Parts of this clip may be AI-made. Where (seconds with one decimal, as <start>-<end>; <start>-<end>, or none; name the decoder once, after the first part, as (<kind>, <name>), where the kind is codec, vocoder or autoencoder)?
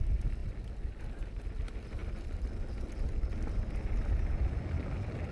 none